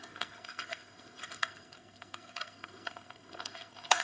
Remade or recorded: remade